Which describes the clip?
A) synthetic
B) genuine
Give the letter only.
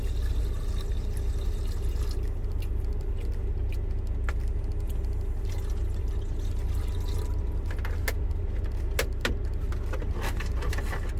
B